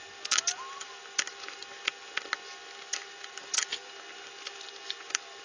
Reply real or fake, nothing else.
real